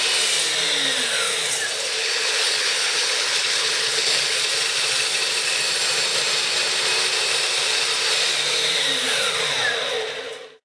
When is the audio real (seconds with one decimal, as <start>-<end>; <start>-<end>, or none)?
0.0-2.0; 4.4-10.6